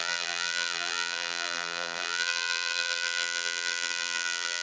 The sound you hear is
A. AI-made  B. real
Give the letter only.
A